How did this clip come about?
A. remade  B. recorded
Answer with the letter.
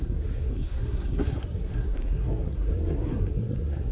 A